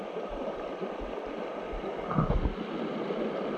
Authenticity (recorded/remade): recorded